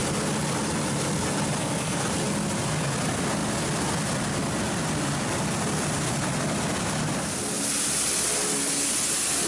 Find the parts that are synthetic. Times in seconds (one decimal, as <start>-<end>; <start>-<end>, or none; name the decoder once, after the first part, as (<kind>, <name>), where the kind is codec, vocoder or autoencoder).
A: 1.6-2.1 (codec, SNAC)